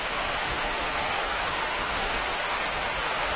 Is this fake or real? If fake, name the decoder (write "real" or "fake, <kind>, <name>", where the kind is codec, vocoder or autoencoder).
fake, autoencoder, DAC-VAE